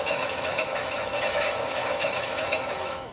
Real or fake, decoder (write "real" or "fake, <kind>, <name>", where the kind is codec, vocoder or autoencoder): fake, autoencoder, DAC-VAE